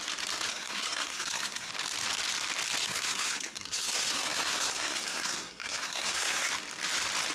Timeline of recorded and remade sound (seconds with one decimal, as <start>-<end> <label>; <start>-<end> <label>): 0.0-0.5 recorded; 0.5-1.7 remade; 1.7-2.8 recorded; 2.8-6.5 remade; 6.5-7.3 recorded